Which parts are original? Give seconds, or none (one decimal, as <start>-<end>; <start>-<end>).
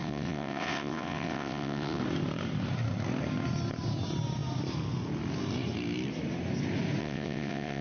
2.0-7.0